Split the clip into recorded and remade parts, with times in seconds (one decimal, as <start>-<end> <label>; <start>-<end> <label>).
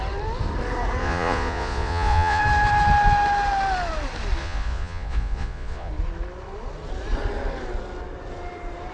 0.0-1.0 recorded; 1.0-2.4 remade; 2.4-4.4 recorded; 4.4-5.9 remade; 5.9-8.9 recorded